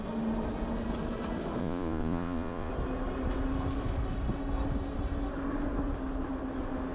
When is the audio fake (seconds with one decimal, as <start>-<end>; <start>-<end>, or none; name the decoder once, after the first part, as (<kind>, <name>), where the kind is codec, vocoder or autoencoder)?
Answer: 1.6-2.7 (vocoder, Vocos)